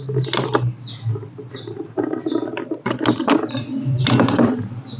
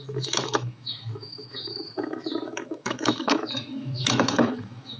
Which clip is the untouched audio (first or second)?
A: first